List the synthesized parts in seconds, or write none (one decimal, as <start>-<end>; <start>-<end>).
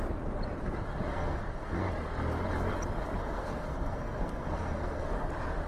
1.1-1.9; 3.2-5.1